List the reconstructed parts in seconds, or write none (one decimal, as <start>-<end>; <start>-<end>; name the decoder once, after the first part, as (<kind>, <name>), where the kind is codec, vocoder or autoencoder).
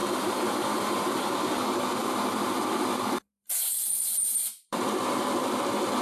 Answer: 0.0-1.3 (vocoder, BigVGAN v2); 2.0-5.6